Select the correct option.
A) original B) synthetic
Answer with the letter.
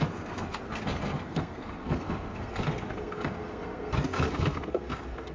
B